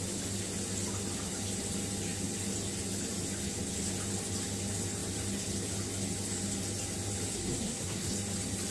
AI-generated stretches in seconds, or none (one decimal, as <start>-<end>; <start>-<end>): 7.3-8.1

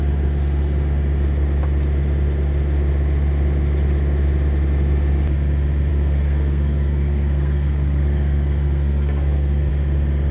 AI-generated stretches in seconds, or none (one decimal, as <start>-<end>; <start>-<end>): 5.9-9.7